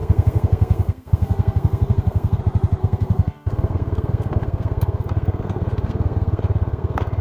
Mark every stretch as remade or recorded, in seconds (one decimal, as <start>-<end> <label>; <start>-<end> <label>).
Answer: 0.0-2.4 remade; 2.4-2.8 recorded; 2.8-7.2 remade